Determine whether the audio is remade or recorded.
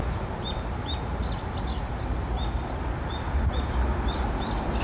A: remade